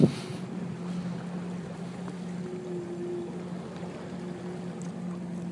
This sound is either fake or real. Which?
real